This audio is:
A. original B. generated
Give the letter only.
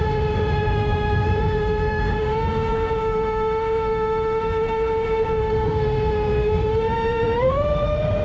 B